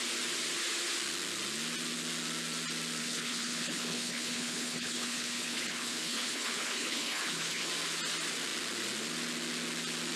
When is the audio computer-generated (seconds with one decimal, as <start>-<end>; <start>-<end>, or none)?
3.0-7.7